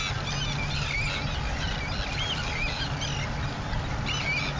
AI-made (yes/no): no